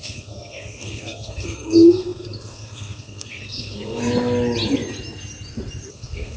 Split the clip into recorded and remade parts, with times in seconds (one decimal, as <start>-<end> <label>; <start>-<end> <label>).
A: 0.0-4.0 remade; 4.0-5.9 recorded; 5.9-6.4 remade